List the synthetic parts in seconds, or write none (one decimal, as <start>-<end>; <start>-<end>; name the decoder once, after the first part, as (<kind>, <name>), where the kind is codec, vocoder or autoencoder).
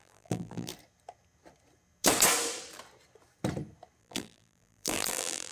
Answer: 0.0-0.7 (vocoder, BigVGAN v2); 4.0-5.5